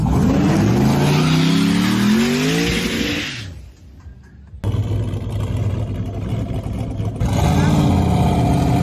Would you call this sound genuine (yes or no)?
yes